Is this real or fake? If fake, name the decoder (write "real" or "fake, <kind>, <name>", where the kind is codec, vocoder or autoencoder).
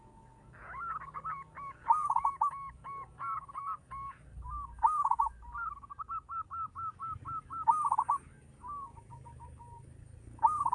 fake, codec, DAC